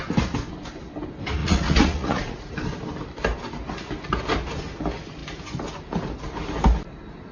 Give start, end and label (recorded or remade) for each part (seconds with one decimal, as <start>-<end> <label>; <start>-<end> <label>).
0.0-1.4 recorded; 1.4-2.5 remade; 2.5-7.3 recorded